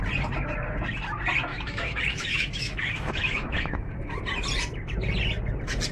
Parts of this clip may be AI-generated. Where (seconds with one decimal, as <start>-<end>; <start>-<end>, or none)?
1.5-3.9